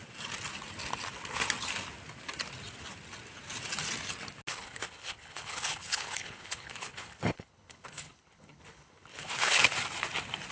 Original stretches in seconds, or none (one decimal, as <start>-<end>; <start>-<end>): 0.0-4.5; 9.6-10.5